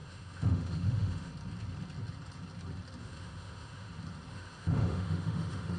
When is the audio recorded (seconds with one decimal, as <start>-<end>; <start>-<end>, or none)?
1.3-3.0; 3.9-4.3